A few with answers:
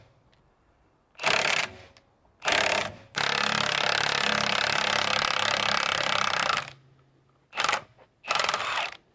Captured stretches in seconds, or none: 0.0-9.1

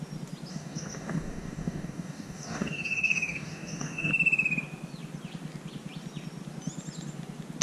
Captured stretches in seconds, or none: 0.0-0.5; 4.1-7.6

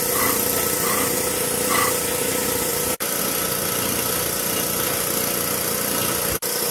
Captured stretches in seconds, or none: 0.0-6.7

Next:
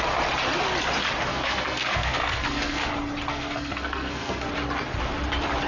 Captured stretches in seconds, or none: 0.0-1.3; 2.9-3.3; 4.5-5.7

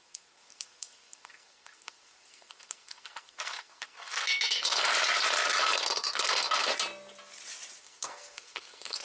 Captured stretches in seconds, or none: 4.9-5.6; 6.7-7.8

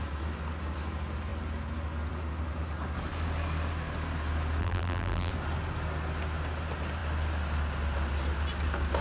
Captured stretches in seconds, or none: 0.0-4.6; 5.3-9.0